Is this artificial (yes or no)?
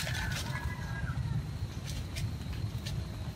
no